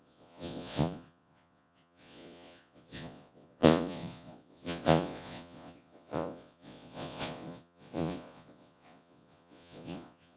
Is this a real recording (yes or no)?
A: no